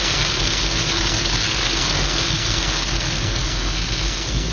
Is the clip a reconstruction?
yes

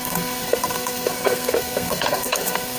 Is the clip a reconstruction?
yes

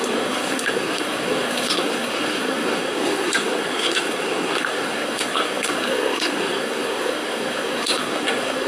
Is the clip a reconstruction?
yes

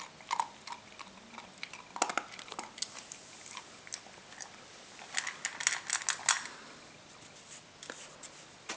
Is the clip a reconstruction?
no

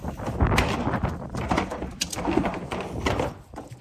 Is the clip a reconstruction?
no